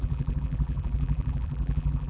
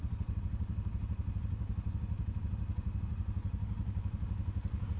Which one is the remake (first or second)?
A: first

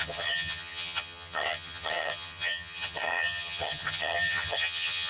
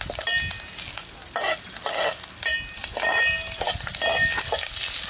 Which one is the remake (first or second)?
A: first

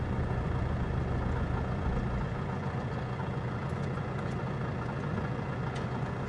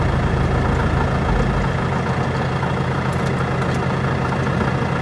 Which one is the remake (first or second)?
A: first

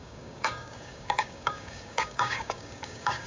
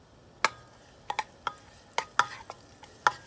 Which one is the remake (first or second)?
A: first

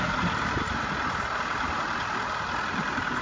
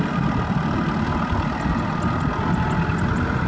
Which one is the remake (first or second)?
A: first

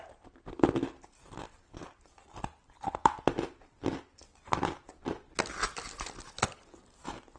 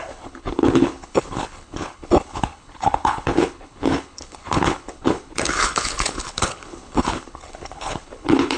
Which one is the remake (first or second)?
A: second